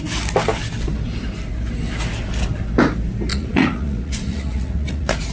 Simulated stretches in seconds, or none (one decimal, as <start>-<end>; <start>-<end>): 3.3-5.3